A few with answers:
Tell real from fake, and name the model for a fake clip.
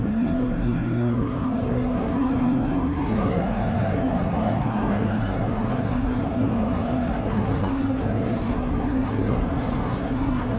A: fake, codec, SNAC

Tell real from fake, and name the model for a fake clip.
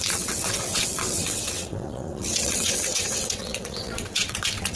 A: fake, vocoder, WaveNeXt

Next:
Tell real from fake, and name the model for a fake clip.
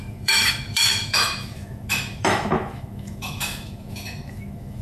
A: fake, autoencoder, DAC-VAE